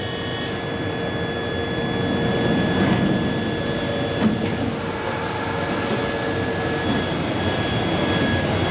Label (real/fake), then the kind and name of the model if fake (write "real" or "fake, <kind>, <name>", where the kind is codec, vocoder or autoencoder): real